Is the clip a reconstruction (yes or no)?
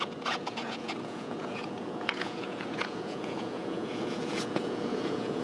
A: yes